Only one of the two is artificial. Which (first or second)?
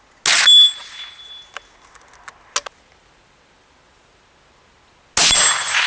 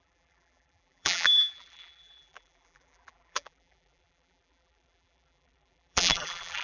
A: second